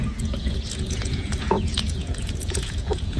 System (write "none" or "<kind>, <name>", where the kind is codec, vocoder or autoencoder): vocoder, Vocos